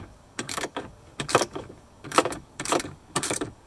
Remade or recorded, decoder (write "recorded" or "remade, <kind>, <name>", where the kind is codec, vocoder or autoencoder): remade, codec, DAC